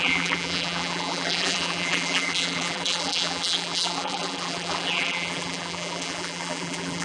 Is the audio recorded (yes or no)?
no